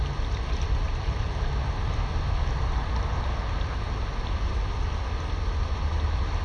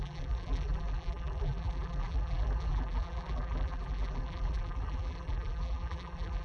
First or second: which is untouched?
first